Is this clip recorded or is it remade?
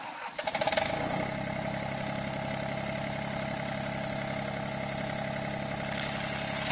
recorded